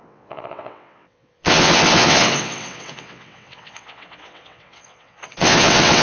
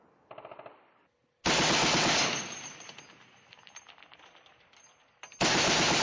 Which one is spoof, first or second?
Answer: first